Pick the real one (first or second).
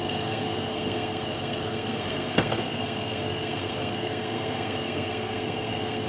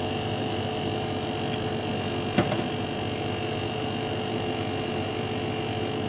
second